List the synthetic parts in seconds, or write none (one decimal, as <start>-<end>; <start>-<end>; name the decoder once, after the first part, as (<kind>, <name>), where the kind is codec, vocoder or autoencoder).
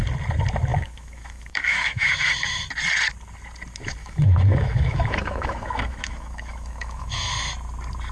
0.7-2.3 (autoencoder, DAC-VAE); 4.0-7.3